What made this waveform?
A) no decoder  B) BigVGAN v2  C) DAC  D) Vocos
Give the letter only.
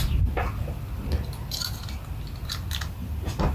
A